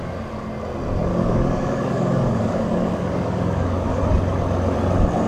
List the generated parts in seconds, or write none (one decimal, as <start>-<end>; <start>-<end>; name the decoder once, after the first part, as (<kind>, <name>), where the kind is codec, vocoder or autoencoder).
1.1-4.0 (codec, DAC)

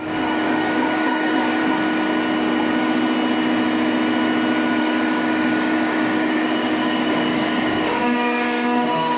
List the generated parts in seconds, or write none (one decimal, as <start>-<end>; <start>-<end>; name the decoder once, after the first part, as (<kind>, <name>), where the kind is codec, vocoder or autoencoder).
0.0-1.6 (codec, DAC); 4.8-9.2

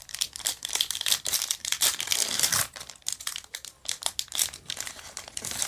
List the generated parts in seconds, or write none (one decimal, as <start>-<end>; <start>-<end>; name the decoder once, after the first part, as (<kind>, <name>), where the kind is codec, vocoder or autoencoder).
0.5-3.0 (vocoder, BigVGAN v2)